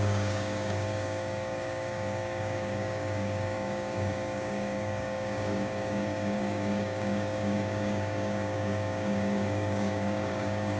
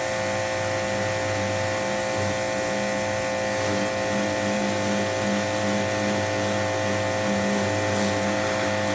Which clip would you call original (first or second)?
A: second